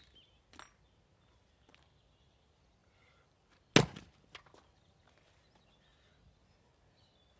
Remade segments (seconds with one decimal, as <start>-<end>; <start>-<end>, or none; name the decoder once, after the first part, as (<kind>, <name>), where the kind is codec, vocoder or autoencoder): none

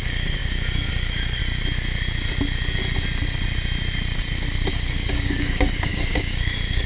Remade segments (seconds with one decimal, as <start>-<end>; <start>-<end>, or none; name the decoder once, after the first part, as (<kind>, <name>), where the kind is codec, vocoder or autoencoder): 0.0-1.4 (codec, DAC); 4.7-6.9

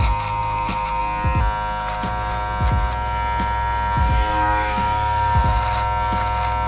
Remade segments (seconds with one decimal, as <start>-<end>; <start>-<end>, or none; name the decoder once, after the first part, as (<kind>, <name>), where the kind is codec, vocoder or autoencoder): 4.0-5.4 (codec, DAC)

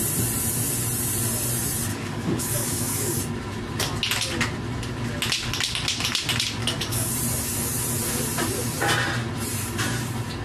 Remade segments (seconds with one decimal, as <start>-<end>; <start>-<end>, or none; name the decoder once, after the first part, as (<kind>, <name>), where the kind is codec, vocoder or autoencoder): 1.9-3.2 (codec, DAC); 6.6-7.1

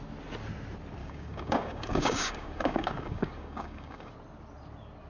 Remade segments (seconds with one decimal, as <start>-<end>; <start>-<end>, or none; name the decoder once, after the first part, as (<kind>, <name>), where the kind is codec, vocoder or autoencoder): 1.0-4.1 (codec, DAC)

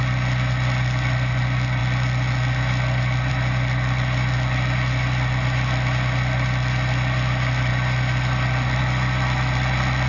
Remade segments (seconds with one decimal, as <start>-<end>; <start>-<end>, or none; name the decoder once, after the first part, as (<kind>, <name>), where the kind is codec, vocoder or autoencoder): none